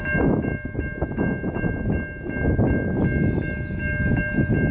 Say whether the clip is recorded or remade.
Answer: recorded